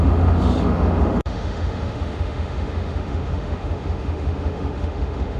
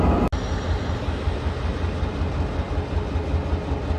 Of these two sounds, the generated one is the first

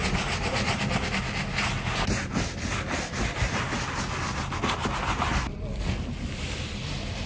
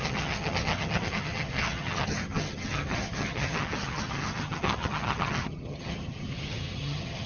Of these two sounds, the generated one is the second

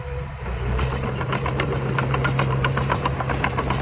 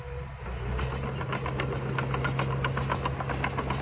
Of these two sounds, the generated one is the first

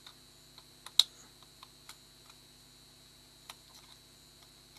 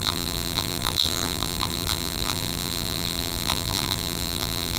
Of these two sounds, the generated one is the second